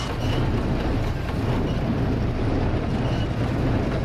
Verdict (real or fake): real